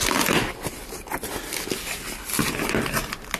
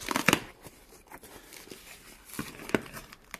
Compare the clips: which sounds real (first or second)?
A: first